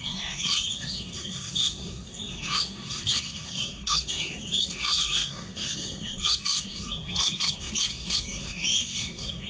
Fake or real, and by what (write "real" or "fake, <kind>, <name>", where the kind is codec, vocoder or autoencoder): fake, codec, SNAC